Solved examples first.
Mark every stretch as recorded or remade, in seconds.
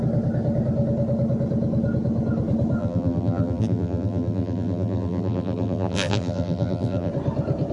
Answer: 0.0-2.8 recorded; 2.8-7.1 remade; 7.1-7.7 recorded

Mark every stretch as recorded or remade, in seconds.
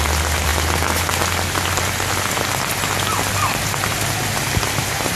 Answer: 0.0-5.2 recorded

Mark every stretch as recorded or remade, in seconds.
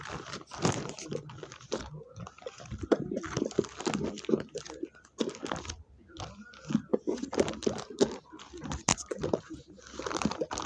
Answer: 0.0-10.7 recorded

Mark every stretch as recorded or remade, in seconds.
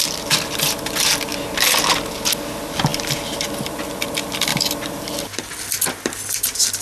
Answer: 0.0-4.5 recorded; 4.5-5.4 remade; 5.4-6.8 recorded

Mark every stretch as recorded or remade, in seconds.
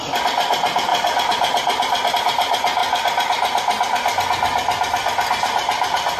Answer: 0.0-0.9 remade; 0.9-2.1 recorded; 2.1-2.8 remade; 2.8-6.2 recorded